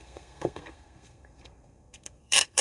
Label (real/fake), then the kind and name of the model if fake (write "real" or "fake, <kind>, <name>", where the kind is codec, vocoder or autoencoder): fake, codec, SNAC